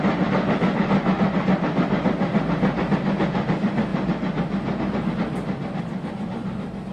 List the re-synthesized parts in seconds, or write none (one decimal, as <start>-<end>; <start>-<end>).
none